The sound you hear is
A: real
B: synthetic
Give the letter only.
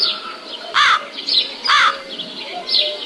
A